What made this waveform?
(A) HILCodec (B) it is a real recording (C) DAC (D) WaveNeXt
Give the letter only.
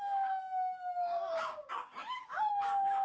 C